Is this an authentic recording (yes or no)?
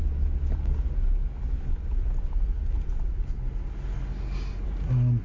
yes